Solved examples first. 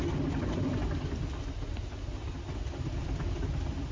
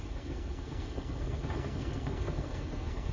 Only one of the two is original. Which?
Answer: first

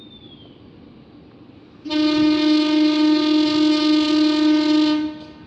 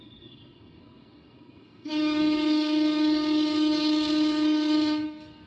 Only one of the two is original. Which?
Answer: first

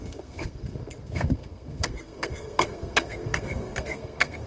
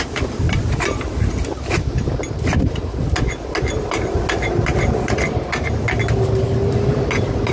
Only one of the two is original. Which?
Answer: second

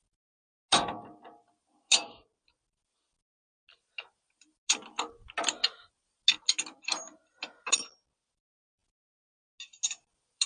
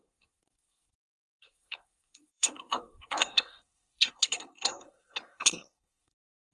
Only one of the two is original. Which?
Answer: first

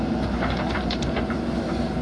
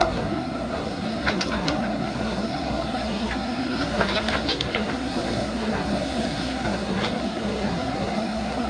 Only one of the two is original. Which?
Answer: first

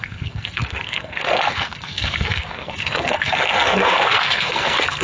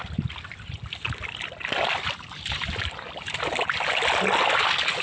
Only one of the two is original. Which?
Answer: second